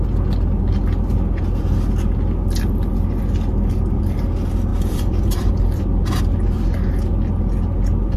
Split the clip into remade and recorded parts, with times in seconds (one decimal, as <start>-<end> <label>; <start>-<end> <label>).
0.0-4.7 recorded; 4.7-5.5 remade; 5.5-8.2 recorded